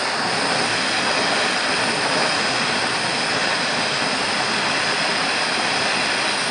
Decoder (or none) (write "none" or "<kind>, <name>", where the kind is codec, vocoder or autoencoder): none